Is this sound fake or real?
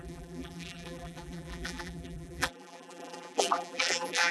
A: fake